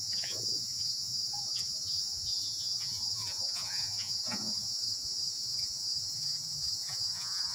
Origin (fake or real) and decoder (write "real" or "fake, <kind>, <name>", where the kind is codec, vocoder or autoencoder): fake, vocoder, Vocos